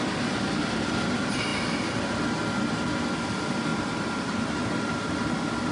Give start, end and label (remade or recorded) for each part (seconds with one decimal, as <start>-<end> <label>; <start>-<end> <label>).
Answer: 0.0-5.7 recorded